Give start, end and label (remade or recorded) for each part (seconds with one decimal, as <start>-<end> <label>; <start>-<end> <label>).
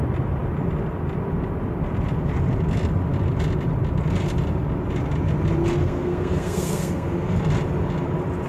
0.0-5.8 recorded; 5.8-7.4 remade; 7.4-8.5 recorded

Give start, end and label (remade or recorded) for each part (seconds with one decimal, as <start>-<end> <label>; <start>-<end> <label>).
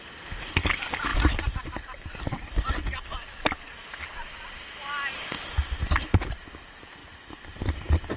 0.0-7.0 recorded; 7.0-8.2 remade